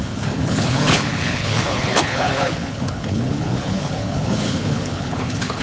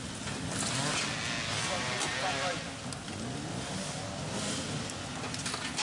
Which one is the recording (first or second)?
second